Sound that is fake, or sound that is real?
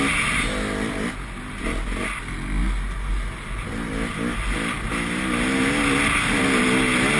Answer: real